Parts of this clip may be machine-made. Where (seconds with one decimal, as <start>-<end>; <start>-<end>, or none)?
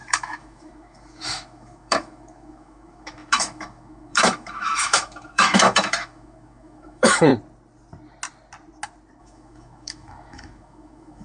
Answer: 0.0-7.3; 9.2-11.2